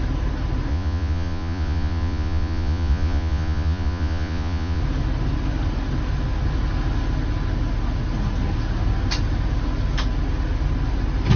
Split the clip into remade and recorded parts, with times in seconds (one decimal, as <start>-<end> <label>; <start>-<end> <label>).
0.0-0.7 recorded; 0.7-4.8 remade; 4.8-11.4 recorded